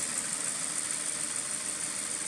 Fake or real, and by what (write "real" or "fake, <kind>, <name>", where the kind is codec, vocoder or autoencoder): real